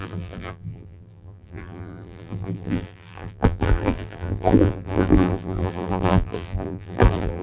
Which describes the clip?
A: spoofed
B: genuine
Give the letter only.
A